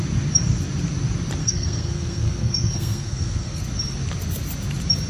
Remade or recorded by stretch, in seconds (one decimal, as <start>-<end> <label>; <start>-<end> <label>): 0.0-1.4 recorded; 1.4-3.6 remade; 3.6-5.1 recorded